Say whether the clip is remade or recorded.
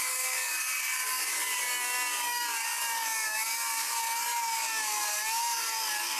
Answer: remade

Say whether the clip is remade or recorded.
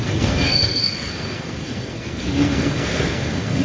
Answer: remade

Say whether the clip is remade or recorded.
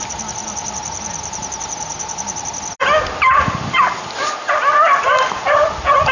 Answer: recorded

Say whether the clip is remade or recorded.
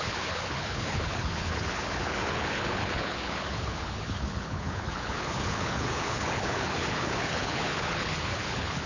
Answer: remade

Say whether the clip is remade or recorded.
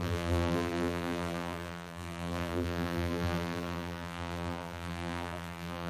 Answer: remade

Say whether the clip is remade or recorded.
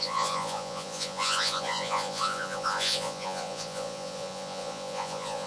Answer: remade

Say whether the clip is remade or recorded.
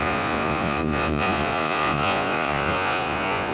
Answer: remade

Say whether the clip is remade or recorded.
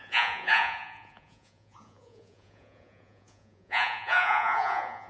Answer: remade